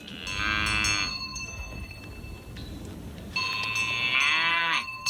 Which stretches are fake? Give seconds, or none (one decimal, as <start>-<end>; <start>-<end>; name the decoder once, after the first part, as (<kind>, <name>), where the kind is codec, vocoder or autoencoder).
1.1-2.0 (codec, SNAC); 4.5-5.1